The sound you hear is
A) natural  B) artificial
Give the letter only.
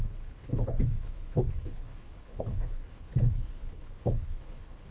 B